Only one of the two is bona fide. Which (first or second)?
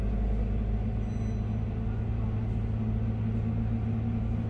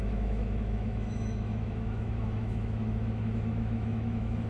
first